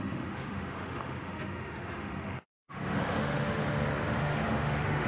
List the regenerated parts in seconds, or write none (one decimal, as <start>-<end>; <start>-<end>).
0.0-3.6; 4.2-5.1

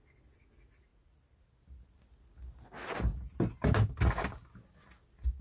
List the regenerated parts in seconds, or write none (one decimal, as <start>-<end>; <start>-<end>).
none

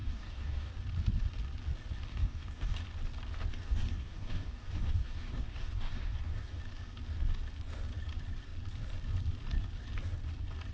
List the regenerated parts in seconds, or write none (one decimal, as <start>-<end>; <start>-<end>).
0.0-0.7; 2.1-2.8; 3.5-6.6

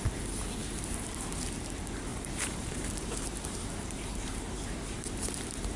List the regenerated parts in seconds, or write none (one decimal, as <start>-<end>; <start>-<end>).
0.6-1.5; 2.1-5.8

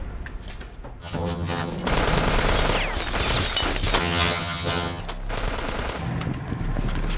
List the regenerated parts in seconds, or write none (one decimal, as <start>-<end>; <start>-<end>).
1.0-1.7; 4.0-5.0

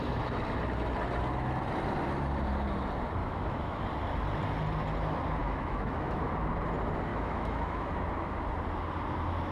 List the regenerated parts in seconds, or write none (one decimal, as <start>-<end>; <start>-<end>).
3.2-3.8; 5.4-6.3; 7.1-7.9